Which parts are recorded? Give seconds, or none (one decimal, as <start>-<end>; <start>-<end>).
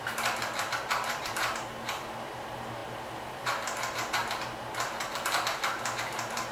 none